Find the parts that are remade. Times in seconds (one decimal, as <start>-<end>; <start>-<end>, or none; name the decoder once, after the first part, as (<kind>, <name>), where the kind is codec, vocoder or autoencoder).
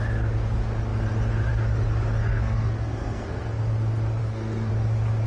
2.2-3.6 (codec, SNAC); 4.2-4.7